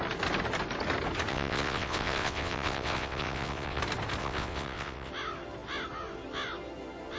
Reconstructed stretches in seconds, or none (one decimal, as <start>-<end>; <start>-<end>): 1.3-3.8; 4.2-5.1